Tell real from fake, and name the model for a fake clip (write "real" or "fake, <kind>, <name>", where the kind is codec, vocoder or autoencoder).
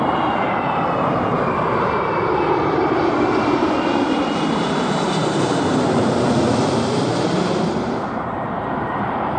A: fake, vocoder, BigVGAN v2